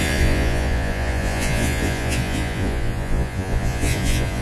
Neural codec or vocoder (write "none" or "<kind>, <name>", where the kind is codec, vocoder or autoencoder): vocoder, Vocos